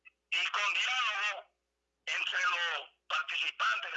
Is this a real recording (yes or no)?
yes